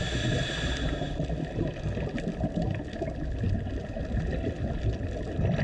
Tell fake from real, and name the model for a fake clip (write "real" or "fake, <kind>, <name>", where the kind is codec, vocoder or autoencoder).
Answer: real